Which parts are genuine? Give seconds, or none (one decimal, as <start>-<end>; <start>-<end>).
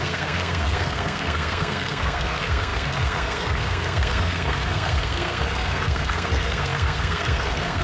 none